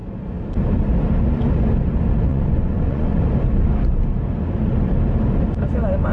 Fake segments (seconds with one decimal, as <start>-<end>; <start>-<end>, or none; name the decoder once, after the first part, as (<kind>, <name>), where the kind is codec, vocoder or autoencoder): 2.3-3.2 (vocoder, Vocos)